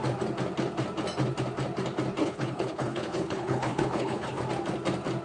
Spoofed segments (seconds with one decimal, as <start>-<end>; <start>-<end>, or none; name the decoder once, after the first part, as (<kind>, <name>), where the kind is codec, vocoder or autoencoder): 2.2-4.4 (codec, HILCodec)